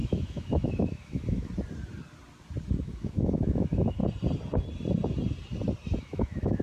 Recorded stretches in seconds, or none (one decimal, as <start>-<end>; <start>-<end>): 1.5-2.8; 4.0-6.0